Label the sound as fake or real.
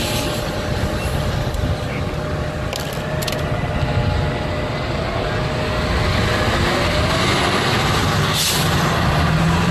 real